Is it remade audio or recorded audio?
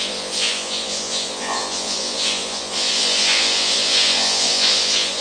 remade